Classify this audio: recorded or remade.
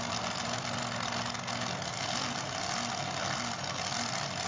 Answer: recorded